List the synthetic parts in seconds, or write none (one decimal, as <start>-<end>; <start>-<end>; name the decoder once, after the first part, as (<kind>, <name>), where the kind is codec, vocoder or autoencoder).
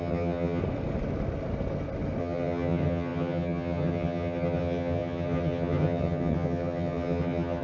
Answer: 0.0-0.6 (vocoder, HiFi-GAN); 2.2-7.6